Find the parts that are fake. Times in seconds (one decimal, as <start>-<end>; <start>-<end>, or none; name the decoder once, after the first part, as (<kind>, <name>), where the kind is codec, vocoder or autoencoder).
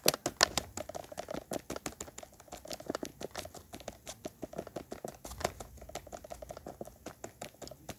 none